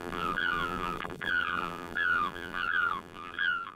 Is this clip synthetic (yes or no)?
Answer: yes